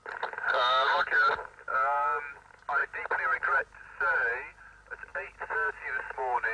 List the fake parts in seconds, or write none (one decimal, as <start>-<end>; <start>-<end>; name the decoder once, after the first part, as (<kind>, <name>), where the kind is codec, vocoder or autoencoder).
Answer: none